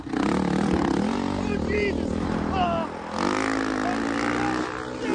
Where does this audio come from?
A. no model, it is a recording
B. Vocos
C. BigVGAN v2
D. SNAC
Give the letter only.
A